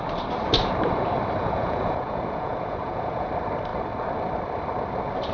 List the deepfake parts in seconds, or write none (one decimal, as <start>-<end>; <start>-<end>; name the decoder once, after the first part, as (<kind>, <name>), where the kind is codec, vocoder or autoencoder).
1.4-3.3 (vocoder, Vocos)